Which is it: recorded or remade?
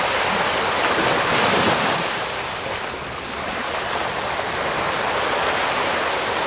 recorded